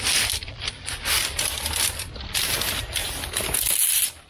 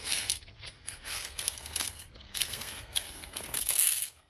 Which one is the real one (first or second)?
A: first